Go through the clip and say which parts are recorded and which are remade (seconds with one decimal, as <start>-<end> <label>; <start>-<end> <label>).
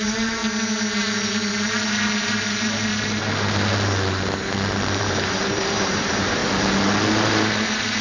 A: 0.0-0.4 remade; 0.4-1.3 recorded; 1.3-2.9 remade; 2.9-5.0 recorded; 5.0-6.4 remade; 6.4-7.1 recorded; 7.1-8.0 remade